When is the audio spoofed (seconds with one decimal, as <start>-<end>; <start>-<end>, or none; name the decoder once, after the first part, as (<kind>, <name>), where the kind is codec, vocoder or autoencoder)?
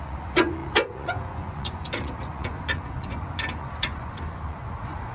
0.0-5.1 (vocoder, Vocos)